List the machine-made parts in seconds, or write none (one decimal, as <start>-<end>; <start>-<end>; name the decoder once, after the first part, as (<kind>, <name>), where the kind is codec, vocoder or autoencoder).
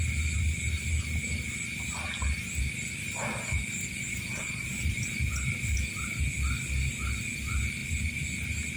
none